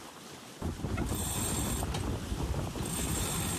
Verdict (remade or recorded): recorded